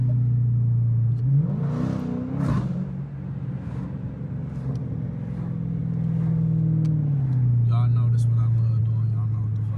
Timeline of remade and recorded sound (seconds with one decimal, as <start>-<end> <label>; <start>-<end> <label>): 0.0-9.8 recorded